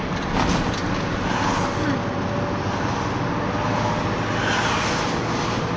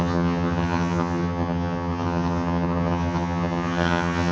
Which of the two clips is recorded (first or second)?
first